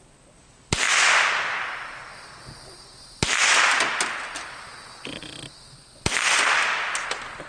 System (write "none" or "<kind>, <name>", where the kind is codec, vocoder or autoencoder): none